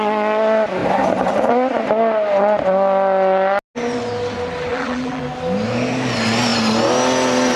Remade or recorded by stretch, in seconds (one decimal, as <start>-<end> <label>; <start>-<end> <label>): 0.0-4.7 recorded; 4.7-5.2 remade; 5.2-7.6 recorded